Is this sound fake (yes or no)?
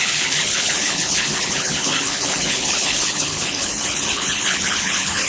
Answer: yes